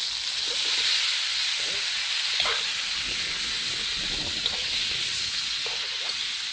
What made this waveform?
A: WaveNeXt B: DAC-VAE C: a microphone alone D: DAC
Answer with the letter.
C